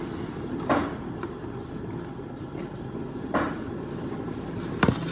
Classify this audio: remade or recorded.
recorded